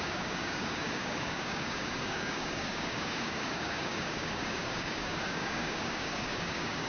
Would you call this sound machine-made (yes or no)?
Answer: yes